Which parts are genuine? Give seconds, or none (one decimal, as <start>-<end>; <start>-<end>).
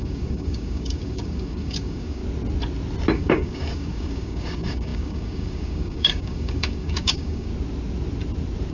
2.2-3.1; 7.5-8.7